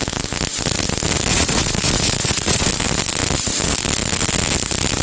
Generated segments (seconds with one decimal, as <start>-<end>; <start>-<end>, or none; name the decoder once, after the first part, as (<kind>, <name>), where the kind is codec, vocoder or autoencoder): 1.3-2.7 (vocoder, Vocos)

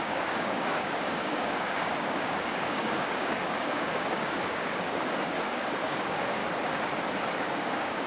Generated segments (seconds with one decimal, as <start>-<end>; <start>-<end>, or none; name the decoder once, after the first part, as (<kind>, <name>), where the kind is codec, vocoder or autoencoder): 0.0-6.4 (codec, DAC); 7.4-8.1